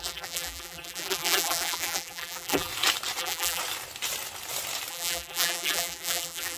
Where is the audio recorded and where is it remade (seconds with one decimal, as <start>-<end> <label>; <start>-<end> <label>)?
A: 0.0-2.7 remade; 2.7-3.2 recorded; 3.2-3.6 remade; 3.6-4.9 recorded; 4.9-6.6 remade